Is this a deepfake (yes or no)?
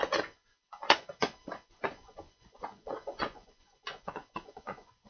yes